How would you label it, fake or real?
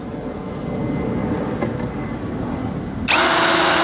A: real